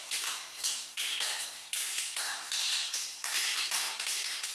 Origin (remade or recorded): remade